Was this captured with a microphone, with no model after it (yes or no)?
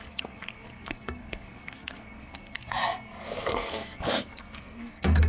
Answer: no